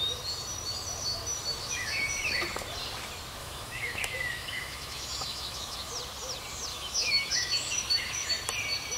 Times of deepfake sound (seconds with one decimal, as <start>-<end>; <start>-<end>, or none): 1.6-2.4; 3.4-5.9; 6.7-8.3